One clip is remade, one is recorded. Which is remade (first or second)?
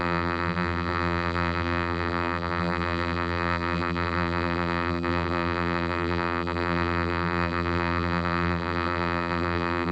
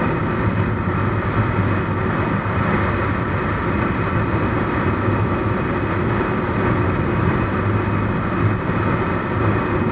first